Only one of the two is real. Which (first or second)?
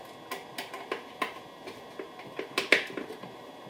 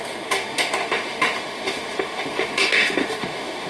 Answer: first